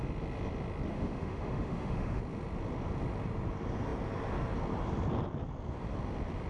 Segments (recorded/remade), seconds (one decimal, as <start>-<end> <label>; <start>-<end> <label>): 0.0-0.9 recorded; 0.9-2.2 remade; 2.2-6.5 recorded